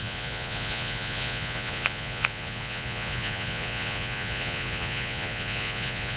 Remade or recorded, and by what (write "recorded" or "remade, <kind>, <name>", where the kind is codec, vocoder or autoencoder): remade, vocoder, Vocos